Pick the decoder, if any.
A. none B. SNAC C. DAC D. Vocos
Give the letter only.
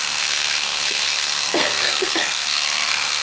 B